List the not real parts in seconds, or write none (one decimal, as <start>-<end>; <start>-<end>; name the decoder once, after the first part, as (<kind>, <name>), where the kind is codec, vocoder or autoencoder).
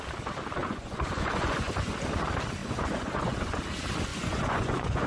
0.6-1.9 (vocoder, Vocos); 2.6-3.6; 4.1-5.1